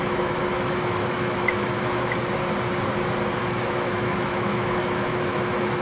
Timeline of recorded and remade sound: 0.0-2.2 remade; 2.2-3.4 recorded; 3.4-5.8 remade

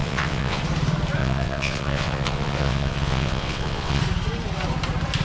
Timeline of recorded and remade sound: 0.0-0.6 remade; 0.6-1.2 recorded; 1.2-4.0 remade; 4.0-5.2 recorded